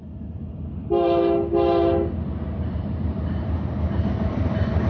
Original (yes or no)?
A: yes